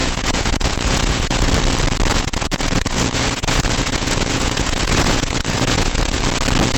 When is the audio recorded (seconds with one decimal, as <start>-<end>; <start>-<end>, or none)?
1.5-2.1; 6.2-6.8